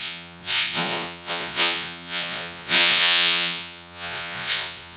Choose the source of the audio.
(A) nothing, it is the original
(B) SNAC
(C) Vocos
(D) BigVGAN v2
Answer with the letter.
C